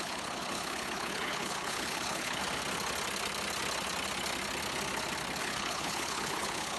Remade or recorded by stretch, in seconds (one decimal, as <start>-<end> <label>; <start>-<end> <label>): 0.0-2.4 remade; 2.4-5.4 recorded; 5.4-6.8 remade